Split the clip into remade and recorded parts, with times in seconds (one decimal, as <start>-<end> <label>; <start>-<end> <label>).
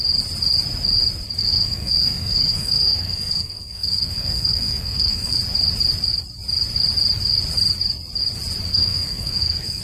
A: 0.0-1.4 recorded; 1.4-5.4 remade; 5.4-8.7 recorded; 8.7-9.8 remade